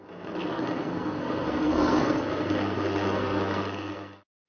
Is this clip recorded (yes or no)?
no